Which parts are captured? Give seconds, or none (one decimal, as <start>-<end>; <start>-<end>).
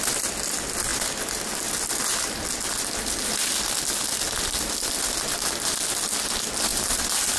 0.0-6.7